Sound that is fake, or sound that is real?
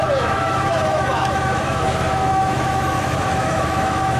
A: fake